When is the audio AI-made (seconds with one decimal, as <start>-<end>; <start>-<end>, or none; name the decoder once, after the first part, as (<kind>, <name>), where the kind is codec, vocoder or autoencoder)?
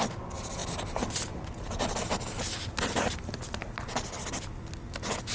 none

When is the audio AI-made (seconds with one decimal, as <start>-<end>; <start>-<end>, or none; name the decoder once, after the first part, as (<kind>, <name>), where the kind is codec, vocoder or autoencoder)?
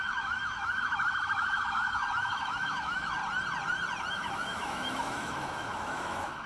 0.0-3.2 (autoencoder, DAC-VAE); 4.1-6.5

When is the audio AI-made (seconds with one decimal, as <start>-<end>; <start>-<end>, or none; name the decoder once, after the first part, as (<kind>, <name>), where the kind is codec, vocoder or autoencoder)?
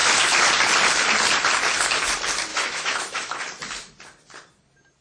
2.5-3.4 (autoencoder, DAC-VAE)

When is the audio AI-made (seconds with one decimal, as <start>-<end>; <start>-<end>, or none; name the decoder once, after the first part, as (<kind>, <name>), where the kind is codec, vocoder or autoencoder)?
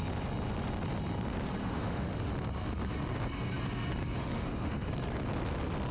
1.6-2.3 (autoencoder, DAC-VAE); 4.2-4.9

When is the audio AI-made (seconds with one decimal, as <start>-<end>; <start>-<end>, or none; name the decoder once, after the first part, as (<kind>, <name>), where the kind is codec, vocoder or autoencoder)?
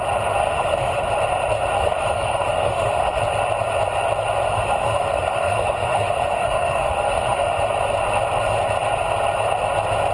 0.4-1.0 (autoencoder, DAC-VAE); 1.8-3.2; 4.5-7.6